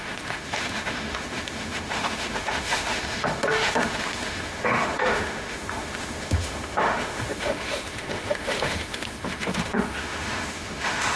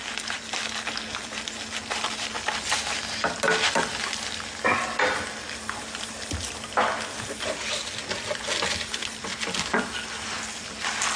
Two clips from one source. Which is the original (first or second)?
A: second